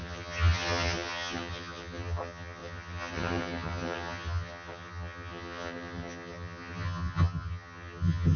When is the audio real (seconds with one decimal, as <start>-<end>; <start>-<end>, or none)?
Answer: none